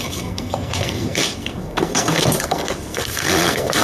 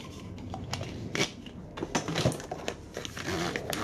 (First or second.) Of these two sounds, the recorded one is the second